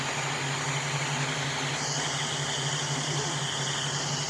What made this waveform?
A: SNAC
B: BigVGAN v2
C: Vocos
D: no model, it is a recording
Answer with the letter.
D